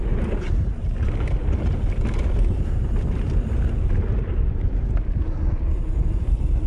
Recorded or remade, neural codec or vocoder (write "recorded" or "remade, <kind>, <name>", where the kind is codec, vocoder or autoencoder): recorded